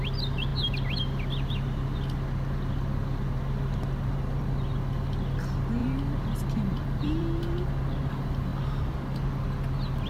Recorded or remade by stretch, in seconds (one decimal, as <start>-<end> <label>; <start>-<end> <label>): 0.0-5.8 recorded; 5.8-7.4 remade; 7.4-10.1 recorded